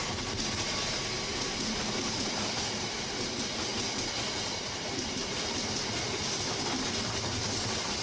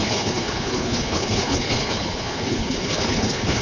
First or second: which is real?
first